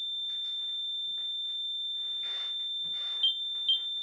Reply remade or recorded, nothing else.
recorded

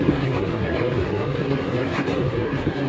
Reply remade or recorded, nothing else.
remade